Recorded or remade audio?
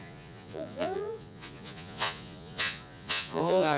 remade